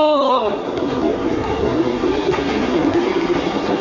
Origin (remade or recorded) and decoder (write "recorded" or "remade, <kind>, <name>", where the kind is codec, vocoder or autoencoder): remade, codec, SNAC